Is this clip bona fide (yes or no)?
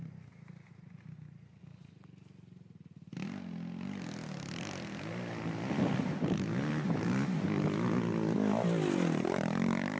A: yes